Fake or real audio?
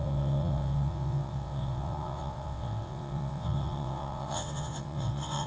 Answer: fake